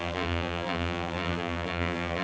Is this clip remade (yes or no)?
yes